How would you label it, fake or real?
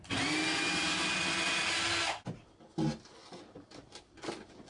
real